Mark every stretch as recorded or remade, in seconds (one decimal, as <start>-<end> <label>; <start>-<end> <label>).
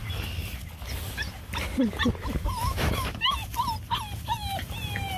0.0-2.6 recorded; 2.6-3.2 remade; 3.2-5.2 recorded